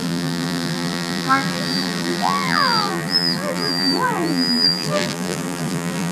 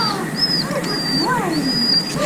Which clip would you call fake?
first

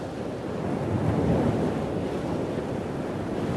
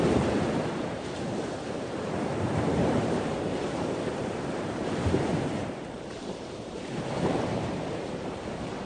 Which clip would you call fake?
second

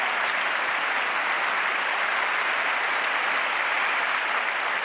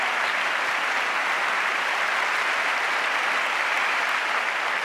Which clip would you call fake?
first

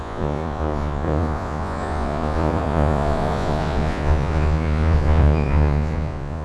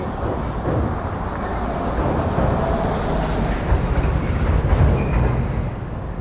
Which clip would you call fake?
first